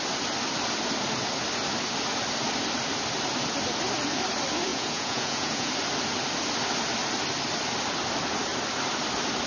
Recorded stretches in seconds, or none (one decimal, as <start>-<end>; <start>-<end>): 0.0-4.7; 5.7-9.5